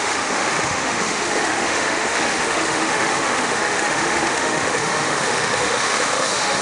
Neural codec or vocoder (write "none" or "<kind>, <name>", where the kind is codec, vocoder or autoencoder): autoencoder, DAC-VAE